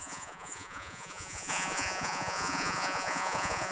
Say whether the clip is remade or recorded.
remade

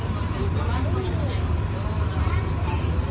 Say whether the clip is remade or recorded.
recorded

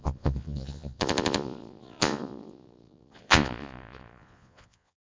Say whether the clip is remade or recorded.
remade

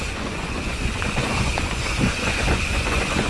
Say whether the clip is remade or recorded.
remade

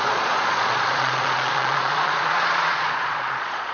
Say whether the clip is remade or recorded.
remade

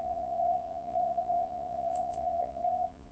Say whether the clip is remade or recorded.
remade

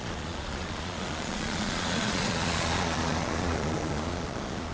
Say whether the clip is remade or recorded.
remade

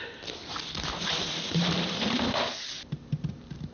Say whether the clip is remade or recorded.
recorded